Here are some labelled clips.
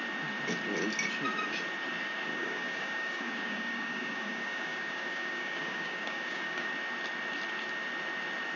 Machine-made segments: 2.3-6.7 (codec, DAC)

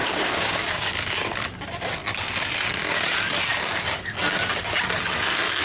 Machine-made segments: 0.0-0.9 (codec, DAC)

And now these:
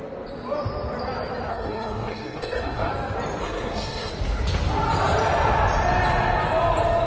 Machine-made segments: 1.5-2.9 (codec, SNAC); 3.4-4.1

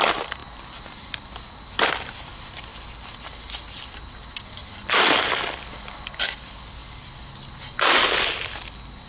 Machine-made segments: none

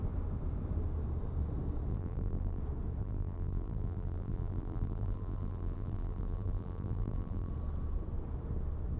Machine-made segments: 1.9-2.6 (vocoder, BigVGAN v2); 3.0-7.5

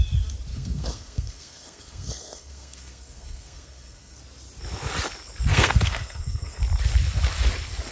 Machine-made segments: 0.5-4.2 (codec, SNAC); 5.5-6.6

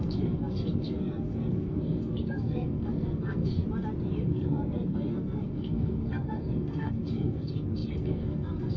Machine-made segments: 0.0-3.6 (codec, SNAC); 4.2-8.8

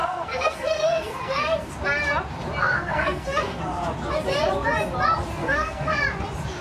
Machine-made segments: 0.0-1.7 (codec, SNAC); 2.6-3.6; 5.4-6.0